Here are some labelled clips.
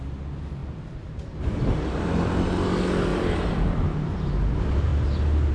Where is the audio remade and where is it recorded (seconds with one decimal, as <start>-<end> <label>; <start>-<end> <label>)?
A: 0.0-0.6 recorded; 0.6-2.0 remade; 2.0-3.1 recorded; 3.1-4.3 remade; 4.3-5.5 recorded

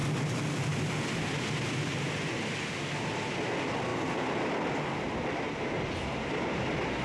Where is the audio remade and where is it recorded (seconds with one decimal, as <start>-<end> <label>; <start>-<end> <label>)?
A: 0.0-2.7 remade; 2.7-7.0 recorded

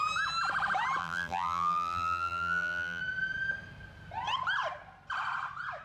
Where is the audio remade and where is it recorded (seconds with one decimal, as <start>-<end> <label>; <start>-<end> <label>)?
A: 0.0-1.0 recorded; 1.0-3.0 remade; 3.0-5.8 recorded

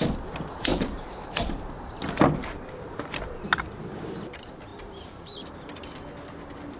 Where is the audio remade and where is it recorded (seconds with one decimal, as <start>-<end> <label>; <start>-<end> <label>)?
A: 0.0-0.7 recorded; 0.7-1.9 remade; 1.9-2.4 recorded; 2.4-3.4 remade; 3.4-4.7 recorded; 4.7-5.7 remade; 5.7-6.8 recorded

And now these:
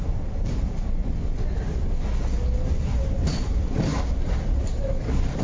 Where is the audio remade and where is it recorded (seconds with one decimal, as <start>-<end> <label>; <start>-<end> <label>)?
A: 0.0-1.0 remade; 1.0-2.7 recorded; 2.7-5.4 remade